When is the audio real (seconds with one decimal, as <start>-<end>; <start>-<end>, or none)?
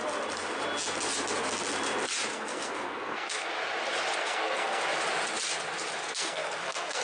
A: 0.0-2.3; 3.5-4.2; 4.8-6.0